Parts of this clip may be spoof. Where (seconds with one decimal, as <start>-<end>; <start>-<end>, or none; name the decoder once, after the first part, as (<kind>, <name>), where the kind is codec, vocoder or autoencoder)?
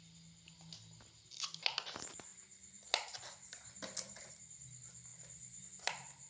none